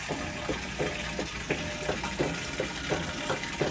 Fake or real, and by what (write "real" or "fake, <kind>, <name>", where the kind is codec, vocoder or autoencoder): real